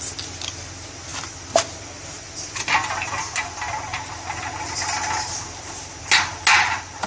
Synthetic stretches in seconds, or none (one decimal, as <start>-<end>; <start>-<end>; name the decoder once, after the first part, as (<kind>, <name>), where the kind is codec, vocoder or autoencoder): none